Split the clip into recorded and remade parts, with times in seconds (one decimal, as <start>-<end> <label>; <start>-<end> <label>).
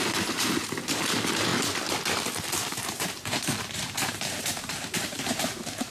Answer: 0.0-1.5 remade; 1.5-2.7 recorded; 2.7-5.9 remade